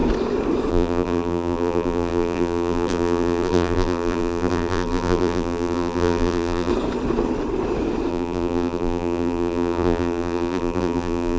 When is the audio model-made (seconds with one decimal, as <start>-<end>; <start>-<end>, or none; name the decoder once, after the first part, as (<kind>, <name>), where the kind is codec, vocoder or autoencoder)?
0.7-6.7 (vocoder, BigVGAN v2); 8.1-11.4